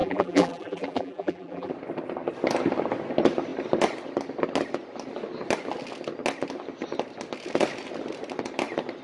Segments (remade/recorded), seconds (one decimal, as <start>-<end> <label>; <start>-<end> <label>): 0.0-1.7 remade; 1.7-9.0 recorded